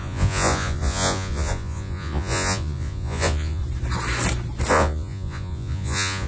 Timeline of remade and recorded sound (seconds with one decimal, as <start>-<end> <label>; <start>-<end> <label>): 0.0-3.6 remade; 3.6-4.7 recorded; 4.7-6.3 remade